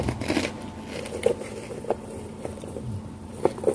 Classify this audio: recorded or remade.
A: recorded